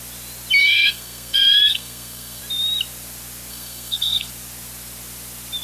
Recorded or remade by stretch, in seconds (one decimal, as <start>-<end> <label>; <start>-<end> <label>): 0.0-0.6 recorded; 0.6-2.4 remade; 2.4-3.5 recorded; 3.5-4.3 remade; 4.3-5.6 recorded